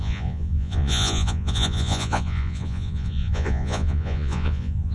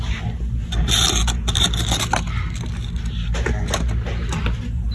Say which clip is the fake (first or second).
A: first